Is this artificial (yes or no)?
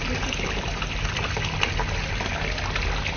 no